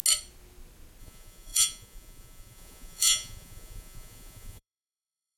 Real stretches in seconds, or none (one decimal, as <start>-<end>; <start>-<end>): 0.0-1.0